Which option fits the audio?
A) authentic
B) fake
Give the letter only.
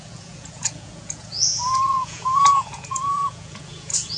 B